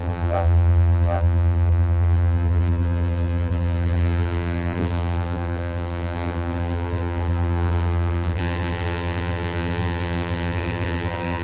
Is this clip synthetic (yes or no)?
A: yes